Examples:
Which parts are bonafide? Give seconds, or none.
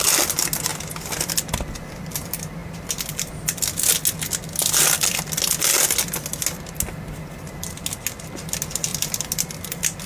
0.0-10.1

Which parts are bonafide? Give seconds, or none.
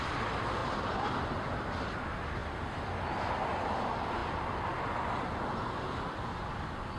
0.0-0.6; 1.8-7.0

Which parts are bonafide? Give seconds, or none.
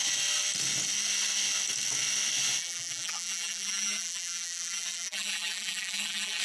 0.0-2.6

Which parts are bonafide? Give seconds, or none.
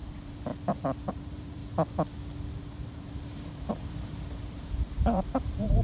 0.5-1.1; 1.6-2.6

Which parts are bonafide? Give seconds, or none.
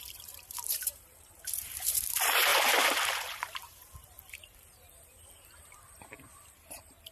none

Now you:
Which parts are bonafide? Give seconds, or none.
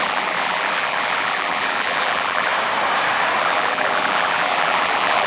2.5-3.4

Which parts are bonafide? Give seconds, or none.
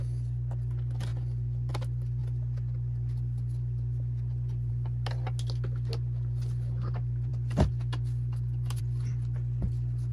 0.0-10.1